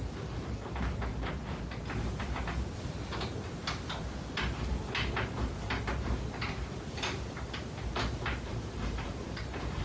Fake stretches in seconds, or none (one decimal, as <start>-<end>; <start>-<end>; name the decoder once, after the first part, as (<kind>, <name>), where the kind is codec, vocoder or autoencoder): 8.5-9.8 (vocoder, BigVGAN v2)